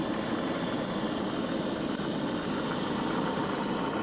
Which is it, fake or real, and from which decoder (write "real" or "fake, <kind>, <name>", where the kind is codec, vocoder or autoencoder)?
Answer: real